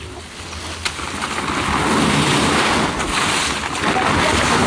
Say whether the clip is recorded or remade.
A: recorded